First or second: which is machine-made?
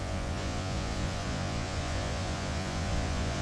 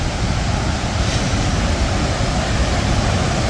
first